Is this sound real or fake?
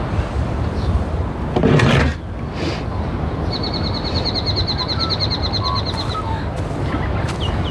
real